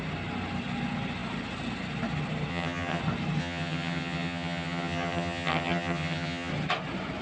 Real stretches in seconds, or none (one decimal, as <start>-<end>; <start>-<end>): 0.0-2.5; 3.0-3.4; 6.5-7.2